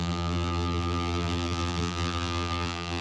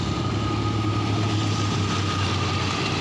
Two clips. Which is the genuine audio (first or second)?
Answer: second